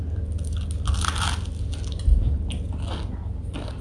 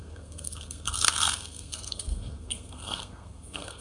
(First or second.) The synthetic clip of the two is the second